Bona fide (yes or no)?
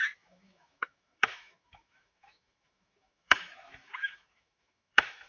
no